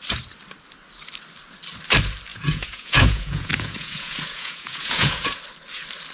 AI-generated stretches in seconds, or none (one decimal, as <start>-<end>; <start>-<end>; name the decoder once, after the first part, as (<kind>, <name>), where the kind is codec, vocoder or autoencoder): 2.3-5.4 (vocoder, Vocos)